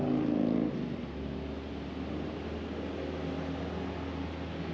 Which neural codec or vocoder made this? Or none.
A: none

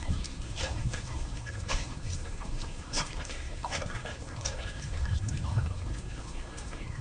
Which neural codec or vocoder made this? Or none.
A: codec, SNAC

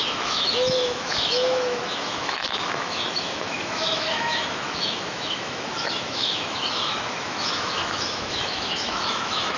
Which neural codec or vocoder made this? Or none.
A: autoencoder, DAC-VAE